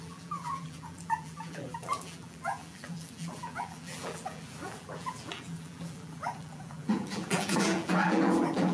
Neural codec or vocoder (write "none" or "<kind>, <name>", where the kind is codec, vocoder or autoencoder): vocoder, BigVGAN v2